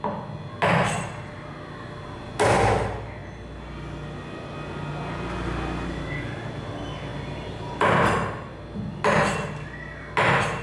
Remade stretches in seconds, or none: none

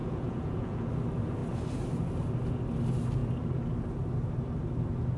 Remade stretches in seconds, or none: 0.0-0.9 (vocoder, Vocos)

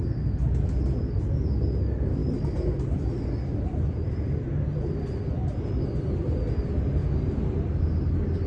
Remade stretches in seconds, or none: 2.2-3.4 (vocoder, BigVGAN v2); 7.0-7.7

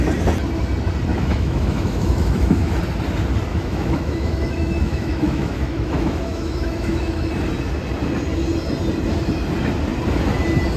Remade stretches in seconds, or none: 1.1-2.8 (autoencoder, DAC-VAE); 3.5-7.3

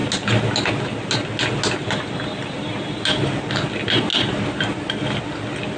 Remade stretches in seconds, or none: none

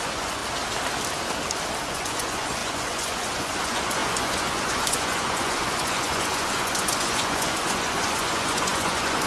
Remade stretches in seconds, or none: 0.0-0.4 (vocoder, Vocos); 1.8-9.3